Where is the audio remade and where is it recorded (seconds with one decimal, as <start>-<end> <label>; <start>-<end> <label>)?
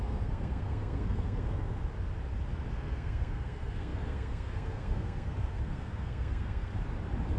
0.0-1.8 remade; 1.8-2.7 recorded; 2.7-6.7 remade; 6.7-7.4 recorded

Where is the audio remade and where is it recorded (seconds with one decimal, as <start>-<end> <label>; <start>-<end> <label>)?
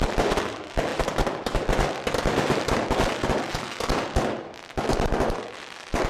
0.0-6.1 recorded